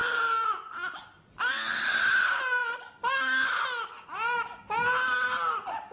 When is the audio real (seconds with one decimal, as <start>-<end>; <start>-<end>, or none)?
0.0-5.9

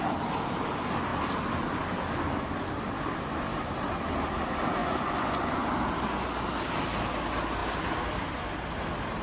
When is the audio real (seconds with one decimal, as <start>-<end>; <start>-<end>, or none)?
0.0-4.8; 5.7-9.2

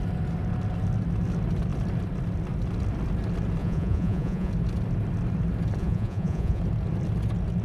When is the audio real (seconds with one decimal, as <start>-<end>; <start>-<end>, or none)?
0.0-3.6; 4.5-5.8; 6.6-7.6

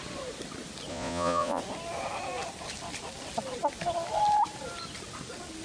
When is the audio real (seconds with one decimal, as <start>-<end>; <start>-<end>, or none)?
0.0-0.9; 1.6-5.6

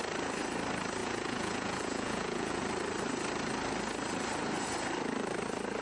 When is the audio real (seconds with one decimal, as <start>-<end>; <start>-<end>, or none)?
0.0-1.0; 2.6-5.8

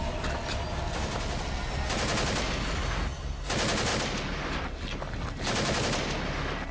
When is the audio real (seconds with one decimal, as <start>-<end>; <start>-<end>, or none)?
0.0-6.7